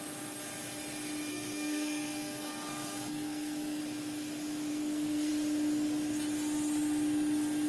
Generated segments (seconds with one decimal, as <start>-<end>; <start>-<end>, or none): 1.3-3.8; 4.7-5.3